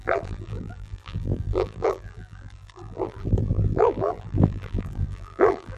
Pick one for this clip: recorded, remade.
remade